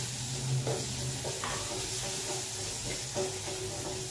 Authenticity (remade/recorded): recorded